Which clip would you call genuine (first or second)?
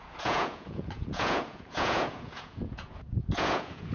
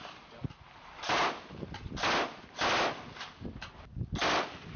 second